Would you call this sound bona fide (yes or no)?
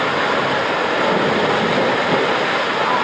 yes